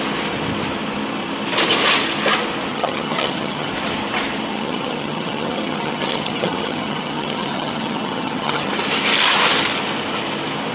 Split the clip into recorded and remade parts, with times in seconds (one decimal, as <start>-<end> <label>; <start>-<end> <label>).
0.0-2.7 recorded; 2.7-3.7 remade; 3.7-4.5 recorded; 4.5-8.7 remade; 8.7-10.7 recorded